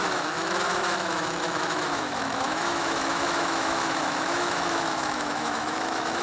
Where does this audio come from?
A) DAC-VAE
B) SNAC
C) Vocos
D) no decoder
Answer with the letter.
A